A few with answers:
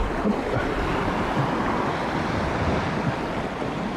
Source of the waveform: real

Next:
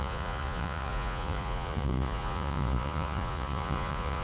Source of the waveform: fake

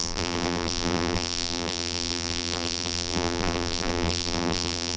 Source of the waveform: fake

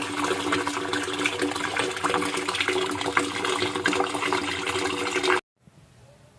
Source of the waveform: real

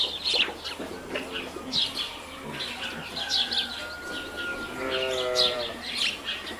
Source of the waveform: real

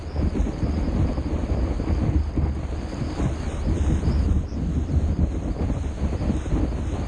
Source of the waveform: real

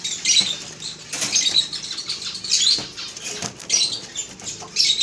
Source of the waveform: real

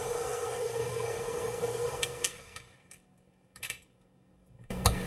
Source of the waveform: fake